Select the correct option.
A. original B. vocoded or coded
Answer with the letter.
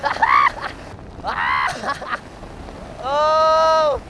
A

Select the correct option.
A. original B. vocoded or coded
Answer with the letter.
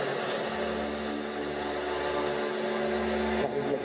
A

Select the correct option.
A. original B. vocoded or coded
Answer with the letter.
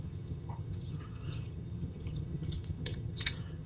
B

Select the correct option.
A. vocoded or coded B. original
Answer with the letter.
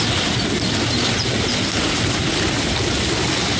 B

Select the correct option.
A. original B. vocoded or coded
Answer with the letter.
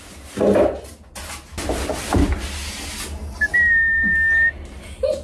A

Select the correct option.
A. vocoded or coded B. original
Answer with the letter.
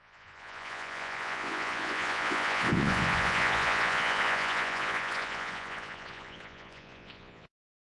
A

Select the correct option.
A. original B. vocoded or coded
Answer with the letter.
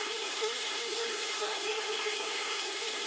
B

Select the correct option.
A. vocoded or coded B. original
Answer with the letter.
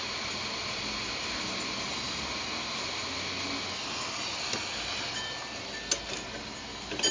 B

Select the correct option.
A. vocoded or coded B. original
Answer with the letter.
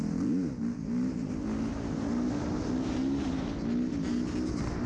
B